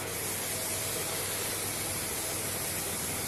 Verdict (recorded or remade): remade